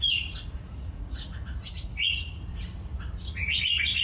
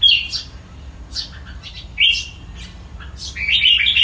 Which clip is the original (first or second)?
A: second